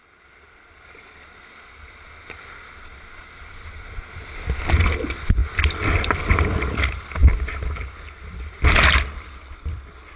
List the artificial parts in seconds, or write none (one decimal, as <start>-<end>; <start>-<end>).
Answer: none